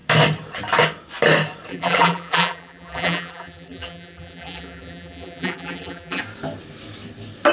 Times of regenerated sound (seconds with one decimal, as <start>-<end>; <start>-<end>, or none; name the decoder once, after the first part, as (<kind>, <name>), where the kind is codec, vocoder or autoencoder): 1.7-6.2 (vocoder, BigVGAN v2)